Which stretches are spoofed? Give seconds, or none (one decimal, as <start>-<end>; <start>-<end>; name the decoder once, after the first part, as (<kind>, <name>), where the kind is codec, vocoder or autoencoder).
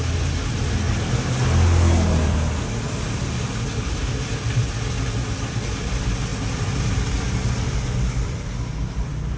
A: none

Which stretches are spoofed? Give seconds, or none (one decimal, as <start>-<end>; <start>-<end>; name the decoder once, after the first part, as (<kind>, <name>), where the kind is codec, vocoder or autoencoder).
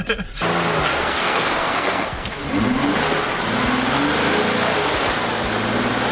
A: 0.9-2.4 (codec, SNAC)